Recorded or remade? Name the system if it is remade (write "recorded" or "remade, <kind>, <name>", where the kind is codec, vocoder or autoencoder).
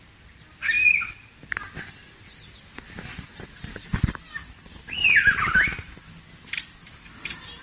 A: recorded